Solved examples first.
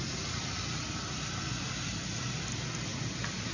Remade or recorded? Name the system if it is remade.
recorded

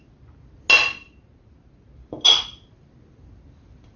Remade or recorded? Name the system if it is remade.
recorded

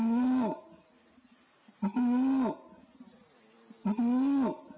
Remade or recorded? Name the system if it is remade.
recorded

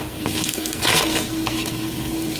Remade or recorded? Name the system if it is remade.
remade, codec, SNAC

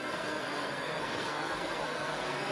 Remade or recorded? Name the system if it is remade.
remade, codec, SNAC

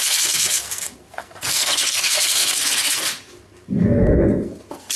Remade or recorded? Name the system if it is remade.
remade, codec, SNAC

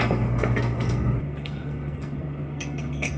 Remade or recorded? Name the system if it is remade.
remade, codec, SNAC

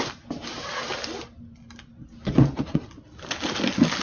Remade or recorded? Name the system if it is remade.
recorded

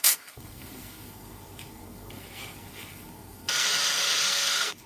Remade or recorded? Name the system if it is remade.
remade, codec, SNAC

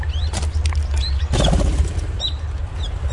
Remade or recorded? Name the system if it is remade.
recorded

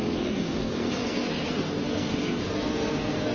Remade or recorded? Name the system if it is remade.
remade, codec, SNAC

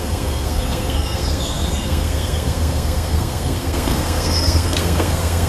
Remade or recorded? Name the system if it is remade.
remade, codec, SNAC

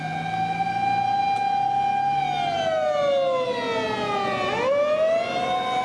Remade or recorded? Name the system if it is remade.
recorded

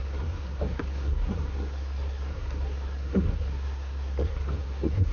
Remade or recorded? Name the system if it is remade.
remade, codec, SNAC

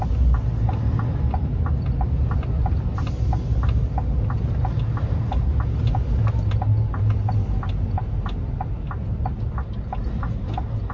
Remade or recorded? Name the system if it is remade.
recorded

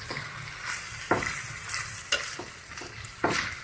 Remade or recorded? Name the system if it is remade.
recorded